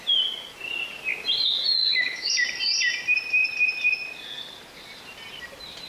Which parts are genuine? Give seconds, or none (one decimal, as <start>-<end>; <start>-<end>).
0.0-1.8; 2.3-5.9